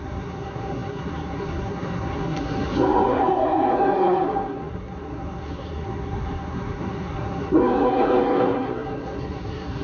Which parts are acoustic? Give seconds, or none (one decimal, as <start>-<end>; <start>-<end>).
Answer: none